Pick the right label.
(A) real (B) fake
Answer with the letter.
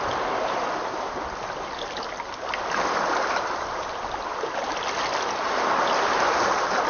A